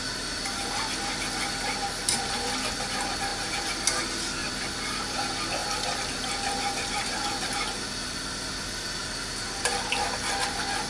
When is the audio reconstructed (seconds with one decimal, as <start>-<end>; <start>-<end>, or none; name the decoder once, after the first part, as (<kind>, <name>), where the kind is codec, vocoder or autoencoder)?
4.4-5.0 (vocoder, BigVGAN v2); 5.6-8.5